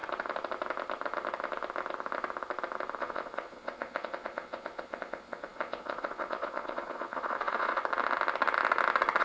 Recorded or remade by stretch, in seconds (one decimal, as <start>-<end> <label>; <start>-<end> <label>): 0.0-3.0 recorded; 3.0-7.8 remade; 7.8-9.2 recorded